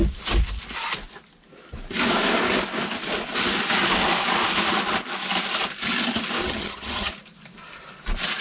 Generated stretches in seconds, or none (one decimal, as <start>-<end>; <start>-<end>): 6.4-7.1